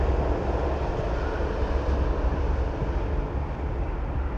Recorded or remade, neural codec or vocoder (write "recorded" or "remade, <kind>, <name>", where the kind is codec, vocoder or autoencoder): recorded